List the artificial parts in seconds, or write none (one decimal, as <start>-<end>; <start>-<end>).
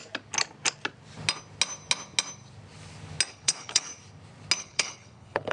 3.3-3.9; 4.6-5.5